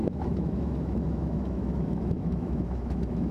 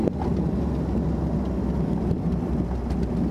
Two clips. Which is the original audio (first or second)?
second